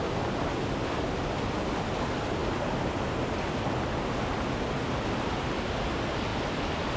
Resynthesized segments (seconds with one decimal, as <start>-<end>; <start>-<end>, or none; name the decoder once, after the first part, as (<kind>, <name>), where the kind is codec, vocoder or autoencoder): none